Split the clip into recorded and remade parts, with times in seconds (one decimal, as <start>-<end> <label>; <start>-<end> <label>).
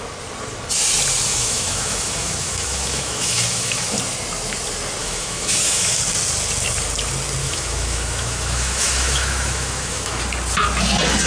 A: 0.0-1.3 recorded; 1.3-4.0 remade; 4.0-5.0 recorded; 5.0-6.0 remade; 6.0-7.4 recorded; 7.4-10.2 remade; 10.2-11.3 recorded